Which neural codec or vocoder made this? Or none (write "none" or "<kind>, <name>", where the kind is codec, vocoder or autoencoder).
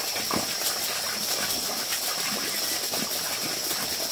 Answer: none